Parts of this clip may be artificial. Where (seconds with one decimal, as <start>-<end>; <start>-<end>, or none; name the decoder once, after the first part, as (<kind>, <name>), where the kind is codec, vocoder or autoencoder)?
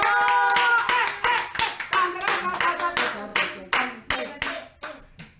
none